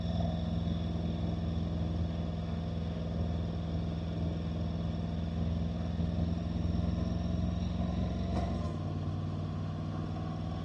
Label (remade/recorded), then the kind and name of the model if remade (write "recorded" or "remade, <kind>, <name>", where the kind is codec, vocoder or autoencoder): recorded